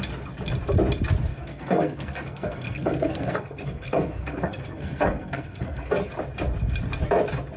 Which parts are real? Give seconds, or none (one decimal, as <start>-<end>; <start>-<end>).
0.0-1.3; 5.9-7.6